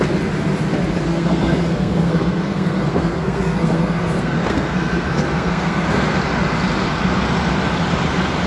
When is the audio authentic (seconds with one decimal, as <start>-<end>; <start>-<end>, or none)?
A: 0.0-1.1; 6.2-8.5